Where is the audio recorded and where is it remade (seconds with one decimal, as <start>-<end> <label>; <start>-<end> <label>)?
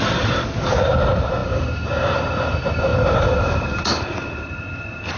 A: 0.0-2.9 recorded; 2.9-4.0 remade; 4.0-5.2 recorded